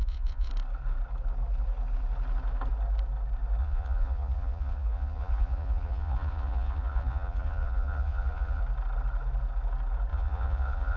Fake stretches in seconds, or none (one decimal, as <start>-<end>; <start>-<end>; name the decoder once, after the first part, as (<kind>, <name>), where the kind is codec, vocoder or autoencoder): 0.0-0.5 (vocoder, Vocos); 3.6-8.6; 10.1-11.0